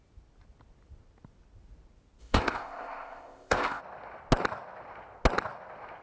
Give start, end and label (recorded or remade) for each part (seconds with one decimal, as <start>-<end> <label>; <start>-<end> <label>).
0.0-2.2 recorded; 2.2-3.8 remade; 3.8-6.0 recorded